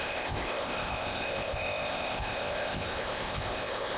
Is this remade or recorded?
remade